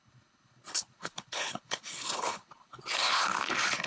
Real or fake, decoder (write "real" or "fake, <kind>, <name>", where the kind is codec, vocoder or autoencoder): fake, codec, HILCodec